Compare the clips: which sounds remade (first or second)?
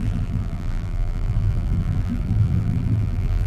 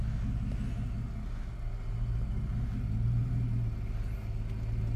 first